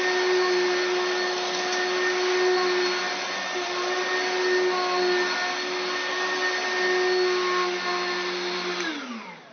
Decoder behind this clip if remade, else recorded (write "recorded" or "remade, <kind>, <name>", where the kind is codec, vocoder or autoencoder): recorded